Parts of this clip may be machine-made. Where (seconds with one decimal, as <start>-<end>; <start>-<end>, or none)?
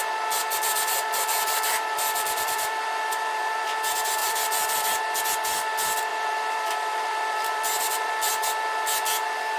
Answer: 0.4-3.8; 4.2-5.2; 6.1-8.3